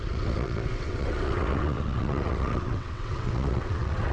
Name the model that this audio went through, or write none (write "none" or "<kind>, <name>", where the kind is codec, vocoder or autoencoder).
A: vocoder, WaveNeXt